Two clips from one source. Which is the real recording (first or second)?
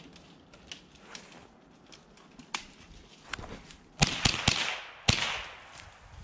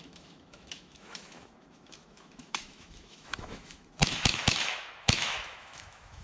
first